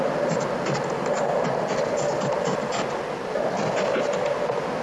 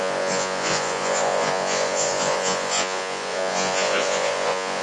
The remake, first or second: second